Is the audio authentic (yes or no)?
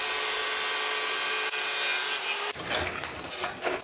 yes